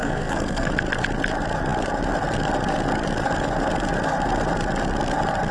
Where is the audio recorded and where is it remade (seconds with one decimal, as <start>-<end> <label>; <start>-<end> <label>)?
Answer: 0.0-0.7 remade; 0.7-5.5 recorded